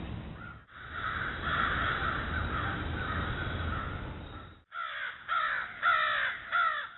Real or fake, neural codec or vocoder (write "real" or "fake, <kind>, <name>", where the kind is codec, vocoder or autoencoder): real